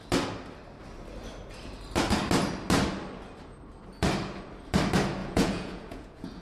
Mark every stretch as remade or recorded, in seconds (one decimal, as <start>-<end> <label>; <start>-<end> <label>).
0.0-5.2 recorded; 5.2-6.4 remade